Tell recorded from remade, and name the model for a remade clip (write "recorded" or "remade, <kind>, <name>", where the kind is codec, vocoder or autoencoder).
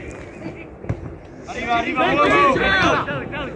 recorded